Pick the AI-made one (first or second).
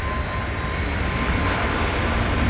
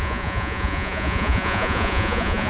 second